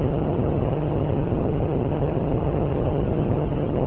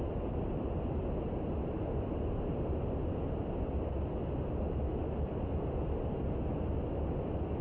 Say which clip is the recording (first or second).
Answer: second